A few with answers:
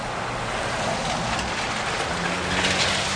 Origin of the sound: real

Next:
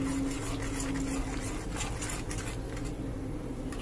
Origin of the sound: real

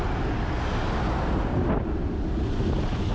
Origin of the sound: real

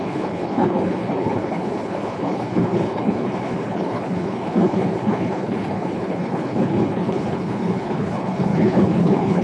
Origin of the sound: fake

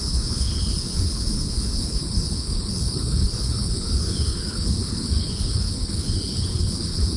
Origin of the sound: fake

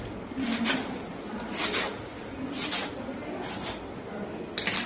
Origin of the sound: real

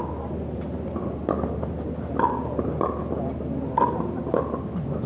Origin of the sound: real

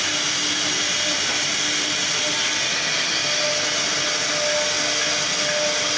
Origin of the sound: real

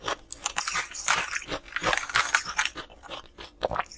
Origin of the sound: real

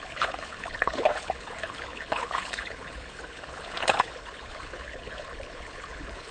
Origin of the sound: fake